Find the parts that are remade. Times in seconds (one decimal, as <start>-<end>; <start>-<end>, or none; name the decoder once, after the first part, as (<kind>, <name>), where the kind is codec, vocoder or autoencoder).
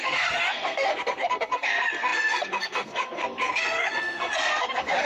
0.0-5.1 (codec, SNAC)